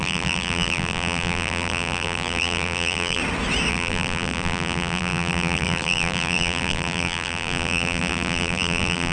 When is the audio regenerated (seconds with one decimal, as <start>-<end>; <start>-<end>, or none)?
0.0-3.2; 3.7-9.1